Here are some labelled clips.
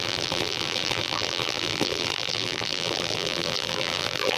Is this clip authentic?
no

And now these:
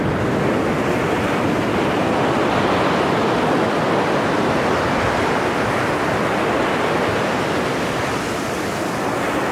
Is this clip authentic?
yes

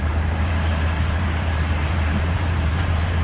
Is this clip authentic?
no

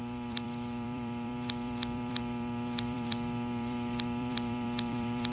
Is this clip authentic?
no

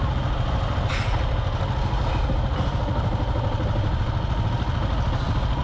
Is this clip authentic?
yes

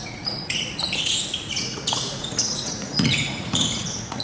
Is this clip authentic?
no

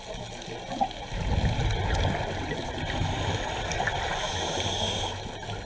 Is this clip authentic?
yes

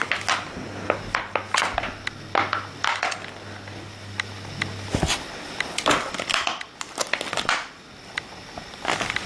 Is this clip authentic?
yes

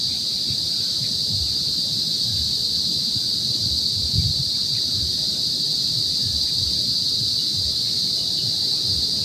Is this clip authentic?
no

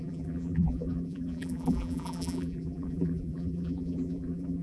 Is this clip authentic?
no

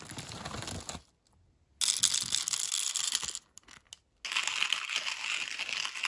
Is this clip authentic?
yes